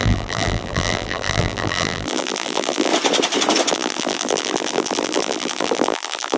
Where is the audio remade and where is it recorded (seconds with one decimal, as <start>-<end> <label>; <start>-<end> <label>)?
0.0-2.9 remade; 2.9-3.7 recorded; 3.7-6.4 remade